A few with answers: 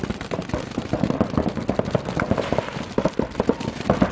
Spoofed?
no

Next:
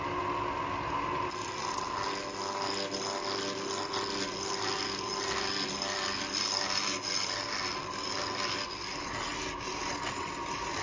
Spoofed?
no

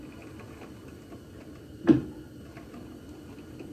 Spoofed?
no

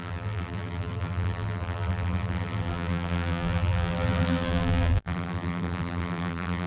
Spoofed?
yes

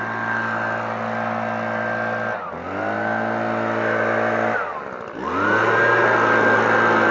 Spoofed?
no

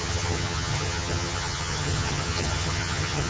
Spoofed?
yes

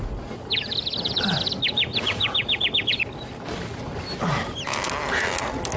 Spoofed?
no